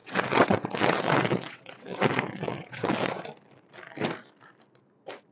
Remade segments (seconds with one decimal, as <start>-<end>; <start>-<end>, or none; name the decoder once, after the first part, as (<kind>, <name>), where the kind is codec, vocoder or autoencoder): 0.0-3.2 (vocoder, WaveNeXt)